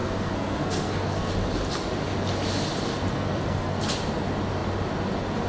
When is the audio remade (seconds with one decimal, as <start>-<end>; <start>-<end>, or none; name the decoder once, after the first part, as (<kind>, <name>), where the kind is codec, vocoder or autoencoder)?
0.0-1.3 (codec, SNAC); 3.1-3.8